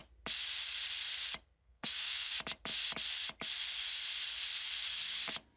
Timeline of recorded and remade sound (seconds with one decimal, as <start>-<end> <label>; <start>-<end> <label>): 0.0-1.6 recorded; 1.6-2.3 remade; 2.3-5.6 recorded